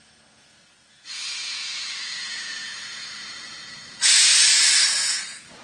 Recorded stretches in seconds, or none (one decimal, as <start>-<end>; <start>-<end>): 4.3-4.9